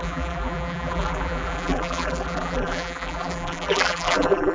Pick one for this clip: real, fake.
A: fake